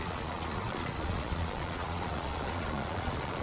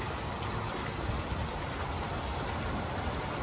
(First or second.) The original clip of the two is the second